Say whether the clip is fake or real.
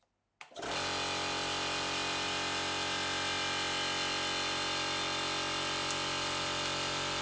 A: real